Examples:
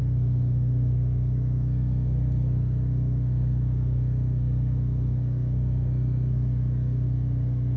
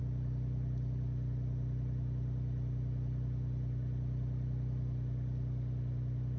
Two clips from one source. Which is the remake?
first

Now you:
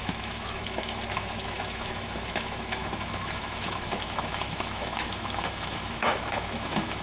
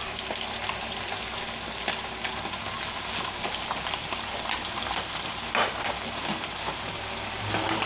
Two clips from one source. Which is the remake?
first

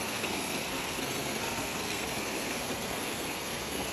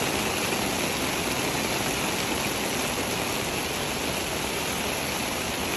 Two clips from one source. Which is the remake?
first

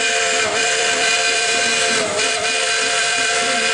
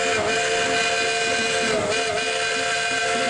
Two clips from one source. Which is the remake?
first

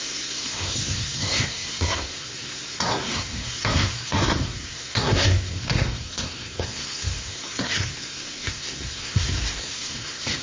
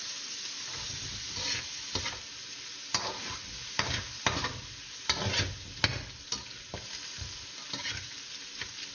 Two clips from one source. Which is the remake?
first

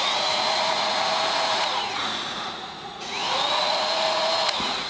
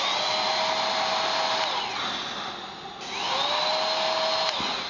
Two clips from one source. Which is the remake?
first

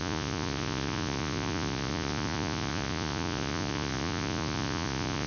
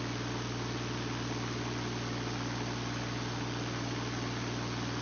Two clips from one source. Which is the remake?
first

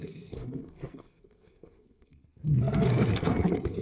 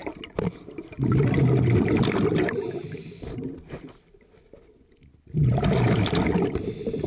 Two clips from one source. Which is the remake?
first